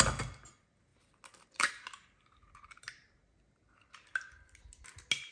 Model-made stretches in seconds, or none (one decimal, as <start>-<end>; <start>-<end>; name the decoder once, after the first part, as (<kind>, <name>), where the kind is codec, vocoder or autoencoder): none